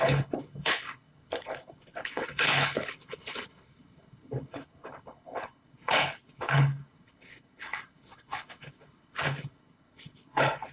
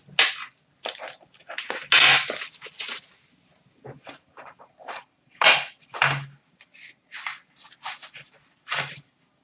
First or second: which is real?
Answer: second